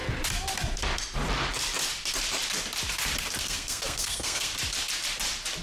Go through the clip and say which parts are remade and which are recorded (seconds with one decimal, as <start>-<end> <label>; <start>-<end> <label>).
0.0-3.4 recorded; 3.4-4.5 remade; 4.5-5.6 recorded